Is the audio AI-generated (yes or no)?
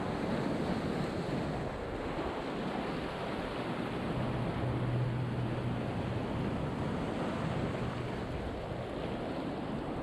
no